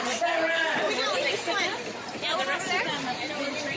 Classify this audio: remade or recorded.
recorded